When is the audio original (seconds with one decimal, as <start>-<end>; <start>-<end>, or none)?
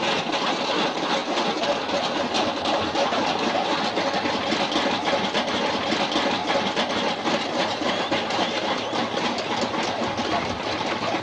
0.0-11.2